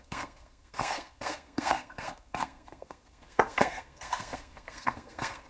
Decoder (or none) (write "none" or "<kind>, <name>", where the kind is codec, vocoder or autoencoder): codec, SNAC